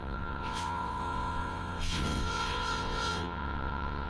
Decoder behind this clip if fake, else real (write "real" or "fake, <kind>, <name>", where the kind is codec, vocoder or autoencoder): fake, vocoder, WaveNeXt